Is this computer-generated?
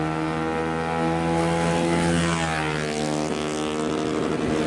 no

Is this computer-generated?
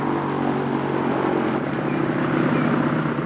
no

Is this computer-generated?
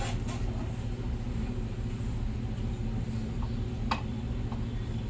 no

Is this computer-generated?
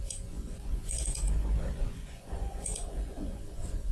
yes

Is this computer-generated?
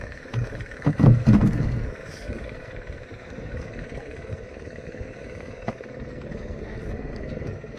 yes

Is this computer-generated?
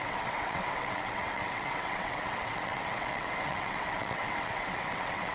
yes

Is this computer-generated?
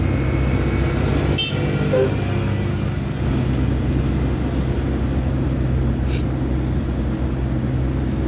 no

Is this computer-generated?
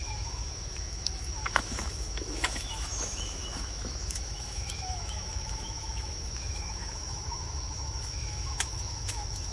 yes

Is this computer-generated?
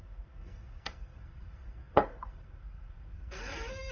yes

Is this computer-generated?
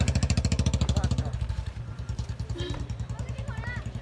yes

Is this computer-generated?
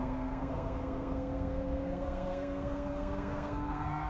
yes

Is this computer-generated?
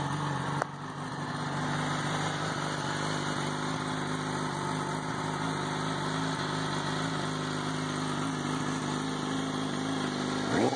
no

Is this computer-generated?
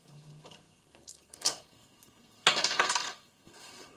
yes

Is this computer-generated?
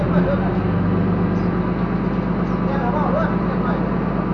no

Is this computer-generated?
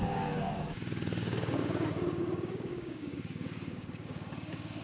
yes